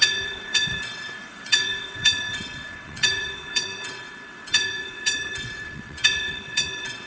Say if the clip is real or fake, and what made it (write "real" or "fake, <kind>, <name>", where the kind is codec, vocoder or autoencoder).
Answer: fake, vocoder, WaveNeXt